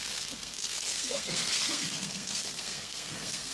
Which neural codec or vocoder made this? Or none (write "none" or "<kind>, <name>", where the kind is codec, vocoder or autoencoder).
codec, SNAC